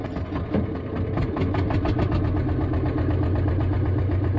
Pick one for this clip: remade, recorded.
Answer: recorded